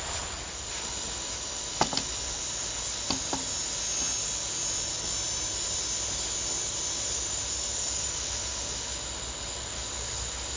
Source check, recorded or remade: recorded